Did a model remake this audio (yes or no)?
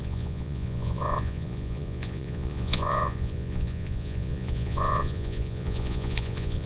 yes